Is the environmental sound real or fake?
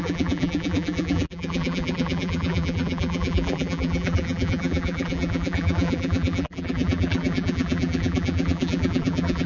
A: fake